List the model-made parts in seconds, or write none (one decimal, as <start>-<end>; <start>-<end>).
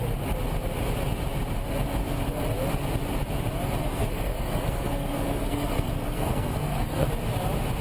3.8-7.1